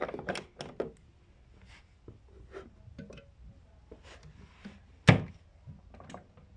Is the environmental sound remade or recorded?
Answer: recorded